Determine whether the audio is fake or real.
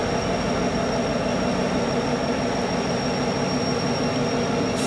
real